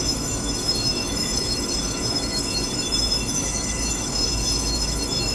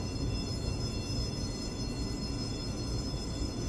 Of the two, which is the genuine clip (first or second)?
second